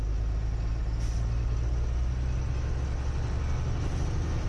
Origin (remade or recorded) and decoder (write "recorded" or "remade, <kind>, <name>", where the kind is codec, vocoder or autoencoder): recorded